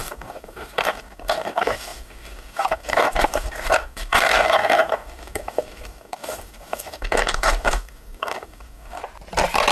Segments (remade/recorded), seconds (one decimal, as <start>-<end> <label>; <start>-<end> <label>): 0.0-9.0 remade; 9.0-9.7 recorded